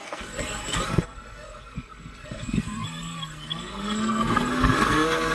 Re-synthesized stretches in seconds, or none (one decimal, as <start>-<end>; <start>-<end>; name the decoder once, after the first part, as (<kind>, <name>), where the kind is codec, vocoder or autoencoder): 0.0-5.3 (codec, SNAC)